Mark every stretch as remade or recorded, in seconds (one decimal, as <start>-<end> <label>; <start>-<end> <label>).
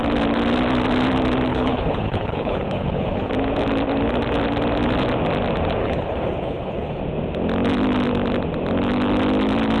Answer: 0.0-1.5 recorded; 1.5-3.3 remade; 3.3-5.8 recorded; 5.8-7.0 remade; 7.0-9.8 recorded